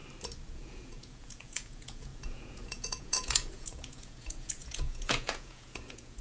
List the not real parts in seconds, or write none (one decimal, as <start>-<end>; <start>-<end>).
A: 0.5-6.2